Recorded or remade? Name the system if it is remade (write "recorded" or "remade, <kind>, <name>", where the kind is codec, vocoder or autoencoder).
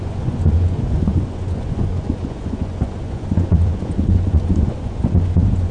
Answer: remade, vocoder, Vocos